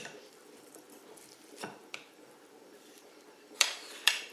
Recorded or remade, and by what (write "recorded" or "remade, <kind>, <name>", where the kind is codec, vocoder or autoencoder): remade, vocoder, BigVGAN v2